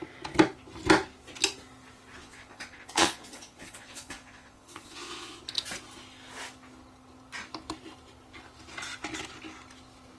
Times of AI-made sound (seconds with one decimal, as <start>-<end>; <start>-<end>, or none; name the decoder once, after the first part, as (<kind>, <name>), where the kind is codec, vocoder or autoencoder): 2.2-5.4 (vocoder, Vocos)